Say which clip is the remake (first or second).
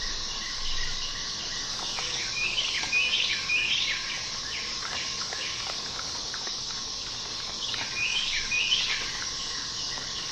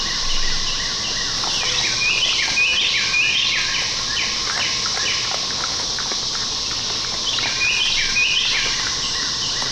first